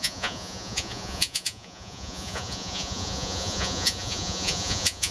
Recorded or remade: remade